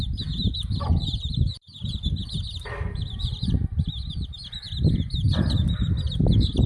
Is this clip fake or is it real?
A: fake